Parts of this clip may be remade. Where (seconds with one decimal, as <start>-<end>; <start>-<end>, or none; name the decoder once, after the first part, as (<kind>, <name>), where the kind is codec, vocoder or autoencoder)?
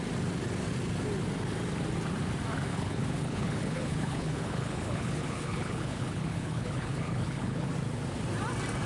2.7-7.7 (codec, HILCodec)